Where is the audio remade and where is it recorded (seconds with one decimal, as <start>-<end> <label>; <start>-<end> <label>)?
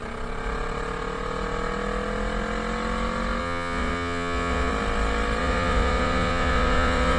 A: 0.0-3.4 recorded; 3.4-4.7 remade; 4.7-5.4 recorded; 5.4-7.2 remade